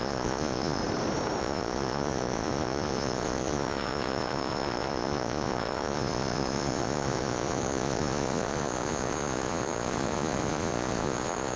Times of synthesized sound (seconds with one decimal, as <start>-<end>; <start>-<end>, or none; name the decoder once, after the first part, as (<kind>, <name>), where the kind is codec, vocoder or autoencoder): 0.0-0.8 (vocoder, Vocos); 1.4-11.6